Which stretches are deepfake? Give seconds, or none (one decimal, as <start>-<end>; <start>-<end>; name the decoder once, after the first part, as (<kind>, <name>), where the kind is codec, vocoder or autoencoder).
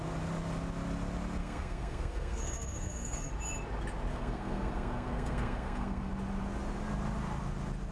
1.4-3.3 (codec, SNAC); 4.1-6.1